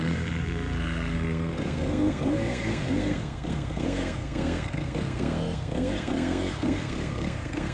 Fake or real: fake